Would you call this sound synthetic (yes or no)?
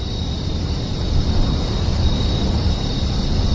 no